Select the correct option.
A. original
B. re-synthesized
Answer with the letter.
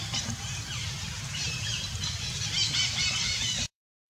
B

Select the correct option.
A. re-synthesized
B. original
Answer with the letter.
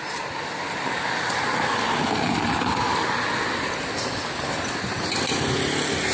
B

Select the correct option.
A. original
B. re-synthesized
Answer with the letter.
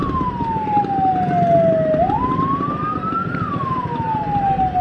A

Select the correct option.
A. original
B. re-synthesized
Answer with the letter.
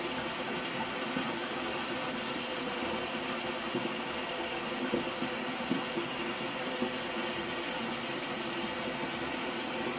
A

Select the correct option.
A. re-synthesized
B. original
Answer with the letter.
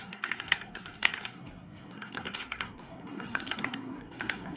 A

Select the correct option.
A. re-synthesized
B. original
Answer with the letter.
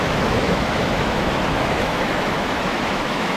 A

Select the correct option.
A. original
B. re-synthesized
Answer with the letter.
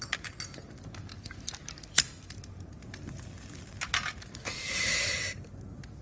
A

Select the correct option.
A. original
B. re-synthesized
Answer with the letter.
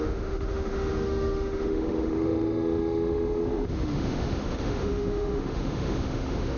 B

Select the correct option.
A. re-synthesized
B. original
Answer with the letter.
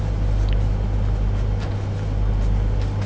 B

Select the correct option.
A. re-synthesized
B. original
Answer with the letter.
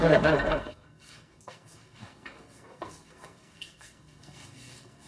A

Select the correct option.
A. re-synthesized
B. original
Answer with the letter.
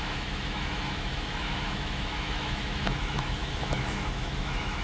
A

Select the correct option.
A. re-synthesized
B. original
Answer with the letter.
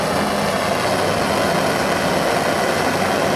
B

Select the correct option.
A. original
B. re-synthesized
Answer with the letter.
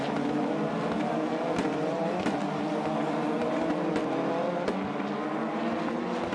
A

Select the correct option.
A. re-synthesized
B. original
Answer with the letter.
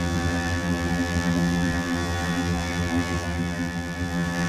A